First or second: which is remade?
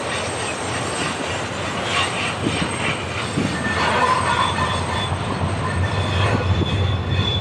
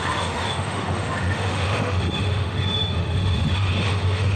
second